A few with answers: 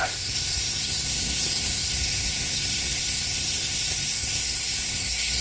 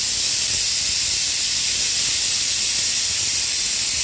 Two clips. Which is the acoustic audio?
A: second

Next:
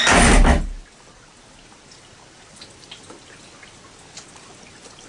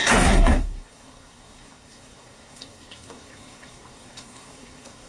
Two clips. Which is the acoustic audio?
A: first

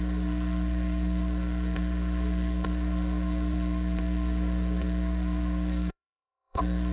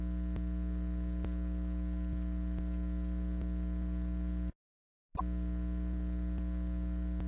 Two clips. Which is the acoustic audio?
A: second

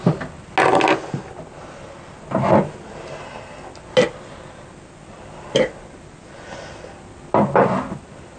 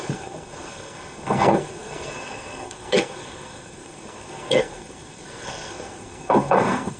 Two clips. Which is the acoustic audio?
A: first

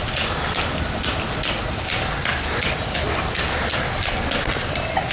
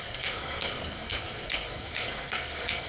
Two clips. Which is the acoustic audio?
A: first